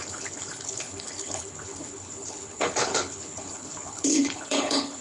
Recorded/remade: remade